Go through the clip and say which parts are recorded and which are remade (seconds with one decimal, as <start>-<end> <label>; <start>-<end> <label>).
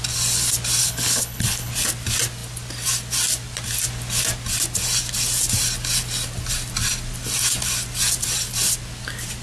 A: 0.0-0.8 recorded; 0.8-1.7 remade; 1.7-9.4 recorded